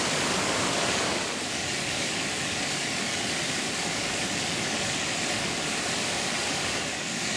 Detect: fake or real fake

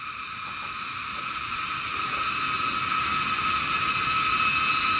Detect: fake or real real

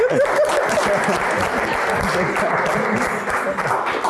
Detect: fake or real real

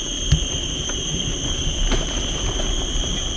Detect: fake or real real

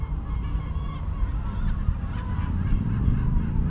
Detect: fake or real real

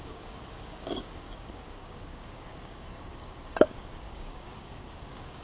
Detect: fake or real fake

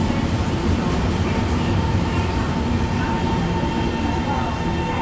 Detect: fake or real real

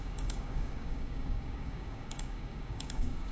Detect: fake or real fake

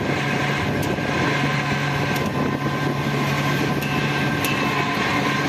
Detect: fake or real real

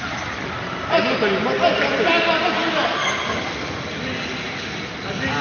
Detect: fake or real real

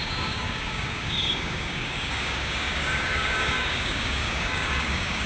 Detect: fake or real fake